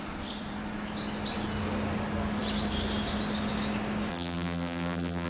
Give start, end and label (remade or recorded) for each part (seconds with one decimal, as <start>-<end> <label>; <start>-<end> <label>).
0.0-4.1 recorded; 4.1-5.3 remade